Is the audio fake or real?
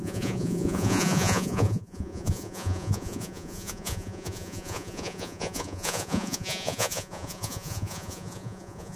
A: fake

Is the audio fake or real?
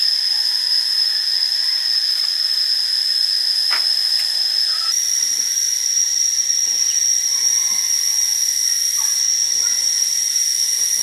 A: real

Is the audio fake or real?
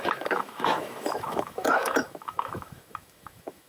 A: fake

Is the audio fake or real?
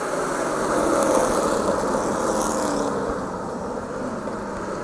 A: real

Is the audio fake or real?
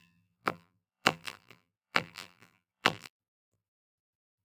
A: fake